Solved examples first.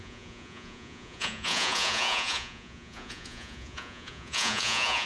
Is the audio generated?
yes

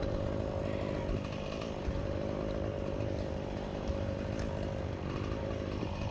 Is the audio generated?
no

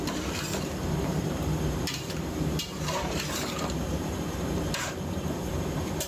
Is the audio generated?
yes